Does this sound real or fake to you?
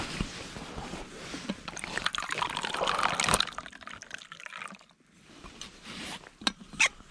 real